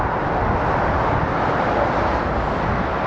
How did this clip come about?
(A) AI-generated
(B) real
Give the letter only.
B